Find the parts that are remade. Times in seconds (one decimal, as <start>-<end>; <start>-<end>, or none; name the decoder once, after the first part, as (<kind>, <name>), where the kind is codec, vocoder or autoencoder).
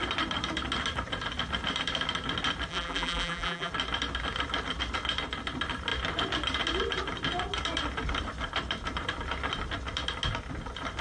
2.7-3.7 (vocoder, BigVGAN v2)